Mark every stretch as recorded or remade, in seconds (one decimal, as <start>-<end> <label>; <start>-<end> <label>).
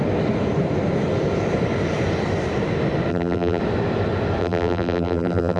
0.0-3.1 recorded; 3.1-3.6 remade; 3.6-4.4 recorded; 4.4-5.6 remade